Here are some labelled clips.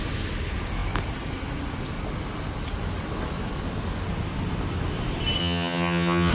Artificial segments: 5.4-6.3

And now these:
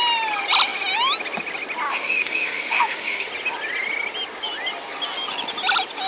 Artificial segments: 1.9-3.3

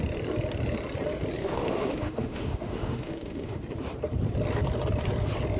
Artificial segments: 1.4-3.6

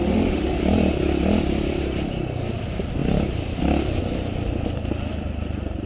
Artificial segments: 0.0-0.6

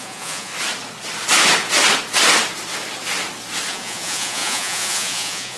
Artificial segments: 0.0-0.5; 3.7-5.6

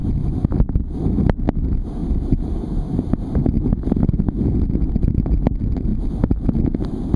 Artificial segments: none

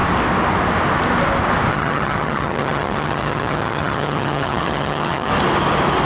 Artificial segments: 1.7-5.3

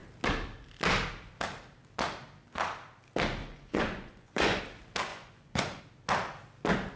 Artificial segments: 3.4-4.6; 5.1-5.8